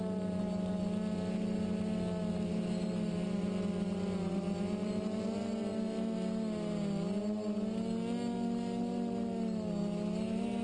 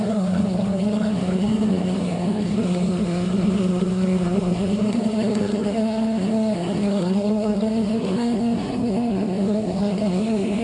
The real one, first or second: first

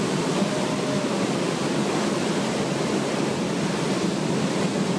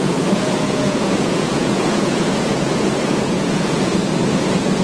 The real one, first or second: first